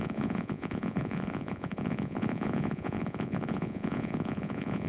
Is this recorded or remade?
remade